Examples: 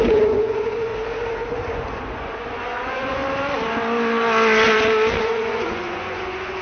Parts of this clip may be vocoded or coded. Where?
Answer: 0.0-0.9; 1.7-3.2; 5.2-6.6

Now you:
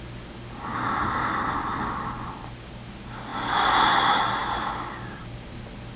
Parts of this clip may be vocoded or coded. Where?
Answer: none

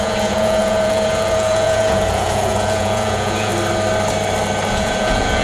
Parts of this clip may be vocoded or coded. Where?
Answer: 0.0-3.5; 4.7-5.4

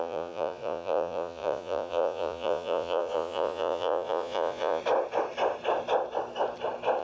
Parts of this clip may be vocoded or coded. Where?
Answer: 0.0-4.8

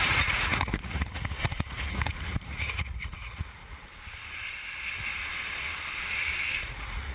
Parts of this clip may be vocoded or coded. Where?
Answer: 0.0-3.9; 6.6-7.1

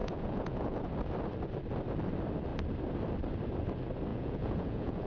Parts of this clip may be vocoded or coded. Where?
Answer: 0.0-0.8; 4.1-5.1